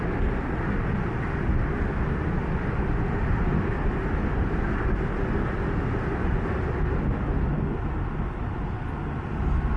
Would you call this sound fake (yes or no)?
no